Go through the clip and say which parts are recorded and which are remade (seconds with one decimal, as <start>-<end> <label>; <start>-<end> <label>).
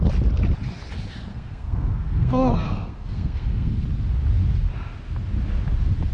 0.0-1.3 recorded; 1.3-3.7 remade; 3.7-6.1 recorded